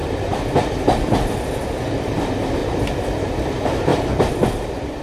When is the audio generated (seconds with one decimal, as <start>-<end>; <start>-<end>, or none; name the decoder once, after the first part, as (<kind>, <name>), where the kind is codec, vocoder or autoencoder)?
0.0-2.1 (vocoder, BigVGAN v2); 2.6-3.3; 3.9-5.0